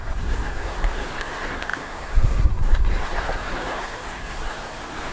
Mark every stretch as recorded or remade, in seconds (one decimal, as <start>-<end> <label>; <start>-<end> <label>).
0.0-5.1 remade